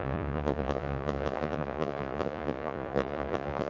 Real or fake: fake